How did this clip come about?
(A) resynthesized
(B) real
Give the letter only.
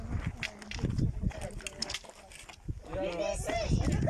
B